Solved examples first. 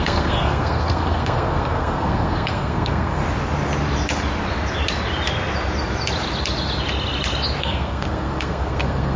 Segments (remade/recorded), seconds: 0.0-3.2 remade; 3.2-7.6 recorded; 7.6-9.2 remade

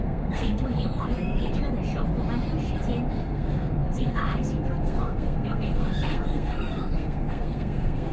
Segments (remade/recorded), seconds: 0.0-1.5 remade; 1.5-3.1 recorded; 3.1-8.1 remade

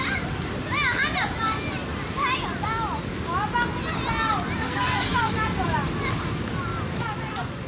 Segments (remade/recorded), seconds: 0.0-4.6 recorded; 4.6-5.3 remade; 5.3-7.7 recorded

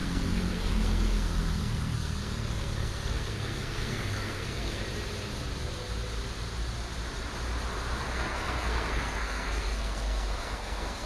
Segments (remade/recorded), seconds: 0.0-4.8 remade; 4.8-8.0 recorded; 8.0-11.1 remade

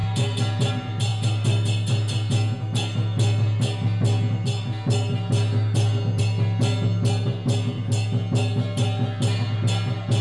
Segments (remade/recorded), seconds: 0.0-10.2 recorded

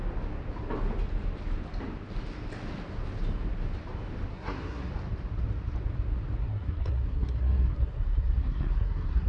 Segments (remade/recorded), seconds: 0.0-4.3 recorded; 4.3-4.9 remade; 4.9-6.4 recorded; 6.4-9.3 remade

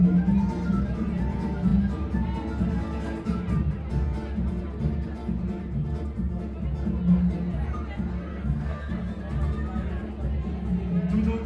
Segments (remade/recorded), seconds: 0.0-8.3 recorded; 8.3-8.9 remade; 8.9-11.5 recorded